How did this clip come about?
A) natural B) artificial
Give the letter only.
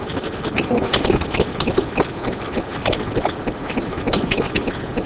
A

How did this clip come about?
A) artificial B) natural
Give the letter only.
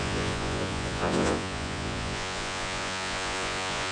A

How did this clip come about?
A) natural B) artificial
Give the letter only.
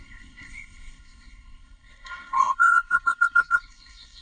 B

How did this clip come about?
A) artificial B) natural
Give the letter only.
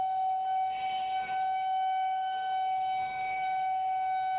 A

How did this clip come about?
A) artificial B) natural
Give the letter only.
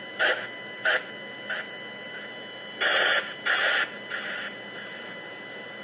B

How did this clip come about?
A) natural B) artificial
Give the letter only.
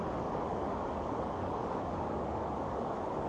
B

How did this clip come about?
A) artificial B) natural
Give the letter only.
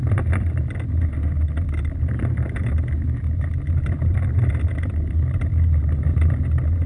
B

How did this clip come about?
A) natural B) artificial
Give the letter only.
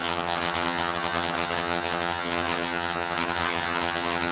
B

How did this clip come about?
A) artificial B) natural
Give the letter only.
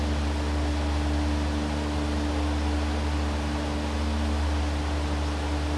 B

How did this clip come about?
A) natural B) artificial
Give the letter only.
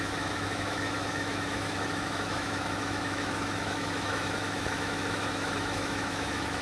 B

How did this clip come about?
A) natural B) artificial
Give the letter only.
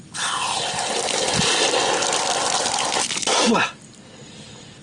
A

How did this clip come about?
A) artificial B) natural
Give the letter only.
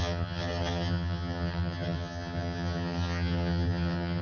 A